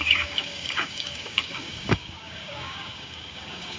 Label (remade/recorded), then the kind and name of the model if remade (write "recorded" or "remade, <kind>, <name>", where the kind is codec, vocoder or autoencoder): remade, codec, DAC